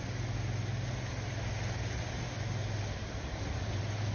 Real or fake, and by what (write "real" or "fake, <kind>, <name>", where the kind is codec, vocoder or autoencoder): real